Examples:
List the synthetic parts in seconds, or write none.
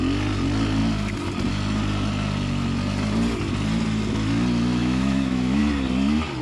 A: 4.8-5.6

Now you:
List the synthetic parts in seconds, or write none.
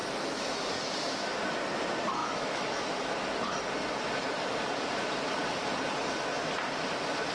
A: 0.0-0.7; 2.2-3.1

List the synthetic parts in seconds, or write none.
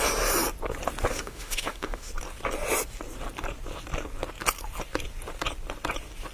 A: 1.1-2.1